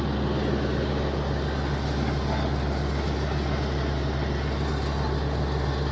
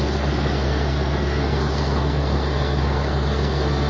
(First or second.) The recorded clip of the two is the first